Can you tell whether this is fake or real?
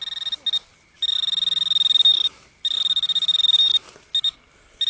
real